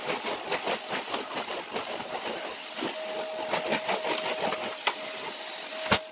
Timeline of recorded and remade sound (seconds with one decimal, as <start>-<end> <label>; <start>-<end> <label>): 0.0-6.1 recorded

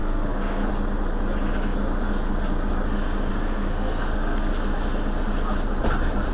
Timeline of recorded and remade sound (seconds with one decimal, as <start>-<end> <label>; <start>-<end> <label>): 0.0-0.7 remade; 0.7-3.3 recorded; 3.3-4.5 remade; 4.5-6.3 recorded

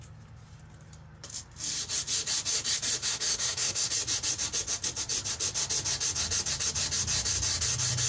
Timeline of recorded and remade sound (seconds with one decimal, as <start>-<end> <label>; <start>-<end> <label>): 0.0-3.0 recorded; 3.0-3.9 remade; 3.9-8.1 recorded

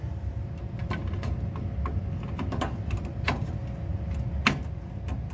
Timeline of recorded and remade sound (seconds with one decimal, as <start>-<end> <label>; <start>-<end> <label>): 0.0-5.3 recorded

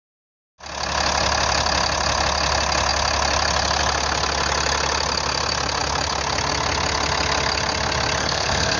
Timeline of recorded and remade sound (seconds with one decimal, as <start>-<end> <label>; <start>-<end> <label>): 0.0-8.2 recorded; 8.2-8.8 remade